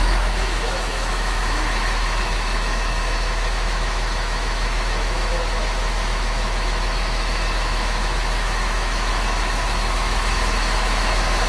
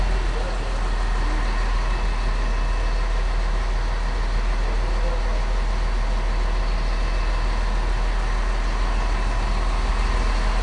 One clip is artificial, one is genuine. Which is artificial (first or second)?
first